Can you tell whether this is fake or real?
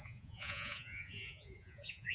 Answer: fake